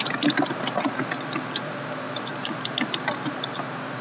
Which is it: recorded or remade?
recorded